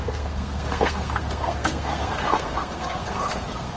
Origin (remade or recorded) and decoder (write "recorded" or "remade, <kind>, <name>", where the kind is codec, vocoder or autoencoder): remade, codec, SNAC